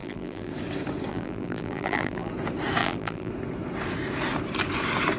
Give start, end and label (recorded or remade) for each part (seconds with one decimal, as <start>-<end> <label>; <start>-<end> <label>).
0.0-0.5 remade; 0.5-1.1 recorded; 1.1-2.3 remade; 2.3-2.8 recorded; 2.8-3.3 remade; 3.3-5.2 recorded